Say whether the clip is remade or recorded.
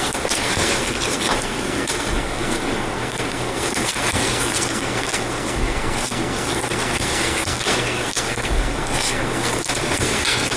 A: remade